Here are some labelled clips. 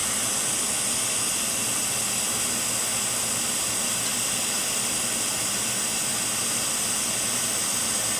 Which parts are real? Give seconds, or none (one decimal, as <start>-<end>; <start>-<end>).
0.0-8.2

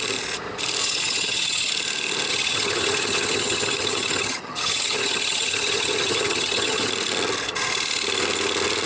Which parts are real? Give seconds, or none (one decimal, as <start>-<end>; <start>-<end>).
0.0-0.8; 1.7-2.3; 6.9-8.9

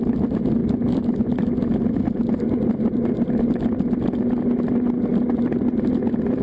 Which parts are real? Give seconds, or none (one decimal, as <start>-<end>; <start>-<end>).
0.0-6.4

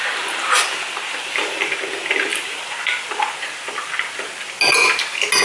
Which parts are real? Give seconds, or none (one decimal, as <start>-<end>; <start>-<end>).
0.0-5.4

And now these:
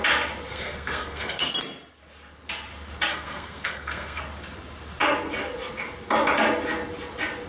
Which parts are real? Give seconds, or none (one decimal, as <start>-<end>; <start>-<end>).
0.0-0.5; 1.5-3.1; 4.2-7.5

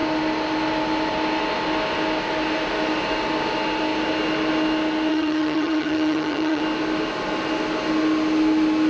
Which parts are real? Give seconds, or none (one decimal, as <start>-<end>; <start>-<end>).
0.0-5.1; 6.6-8.9